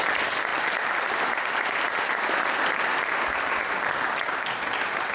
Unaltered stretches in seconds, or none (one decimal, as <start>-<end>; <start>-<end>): 0.0-5.1